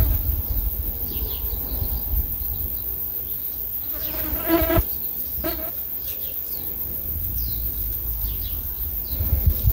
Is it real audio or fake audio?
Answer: real